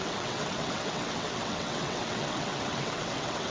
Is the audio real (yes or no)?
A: no